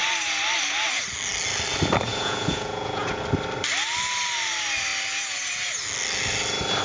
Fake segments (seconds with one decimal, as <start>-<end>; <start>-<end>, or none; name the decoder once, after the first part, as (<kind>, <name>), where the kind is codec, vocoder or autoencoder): 2.1-3.2 (vocoder, Vocos)